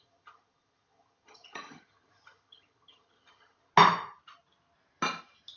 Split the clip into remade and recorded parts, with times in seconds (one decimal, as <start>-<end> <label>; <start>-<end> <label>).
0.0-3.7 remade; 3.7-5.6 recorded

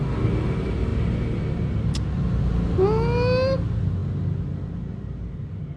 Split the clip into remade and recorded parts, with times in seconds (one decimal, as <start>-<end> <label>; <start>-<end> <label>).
0.0-5.8 recorded

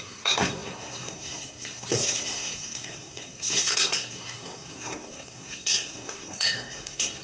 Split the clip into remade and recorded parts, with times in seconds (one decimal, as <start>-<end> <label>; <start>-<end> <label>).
0.0-7.2 remade